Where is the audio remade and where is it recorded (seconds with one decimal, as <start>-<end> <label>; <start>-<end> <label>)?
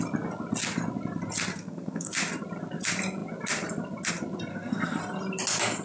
0.0-1.5 recorded; 1.5-2.1 remade; 2.1-4.5 recorded; 4.5-5.0 remade; 5.0-5.8 recorded